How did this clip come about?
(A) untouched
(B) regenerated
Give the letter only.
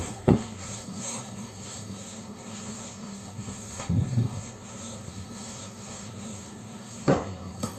B